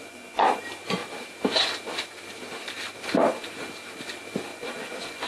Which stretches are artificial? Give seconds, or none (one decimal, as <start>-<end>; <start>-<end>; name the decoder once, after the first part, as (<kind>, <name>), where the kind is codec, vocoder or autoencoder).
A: 0.0-0.6 (vocoder, Vocos); 4.5-5.3